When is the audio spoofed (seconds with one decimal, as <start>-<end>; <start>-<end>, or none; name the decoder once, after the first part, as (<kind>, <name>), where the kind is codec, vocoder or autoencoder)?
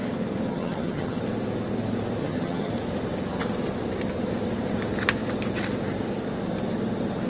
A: 0.5-1.2 (vocoder, HiFi-GAN); 2.2-2.7